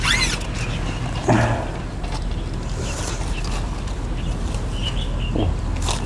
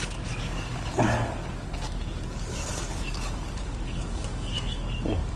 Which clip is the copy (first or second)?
second